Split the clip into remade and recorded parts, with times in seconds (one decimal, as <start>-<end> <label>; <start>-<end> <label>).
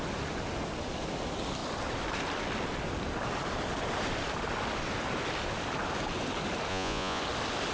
0.0-6.7 recorded; 6.7-7.2 remade; 7.2-7.7 recorded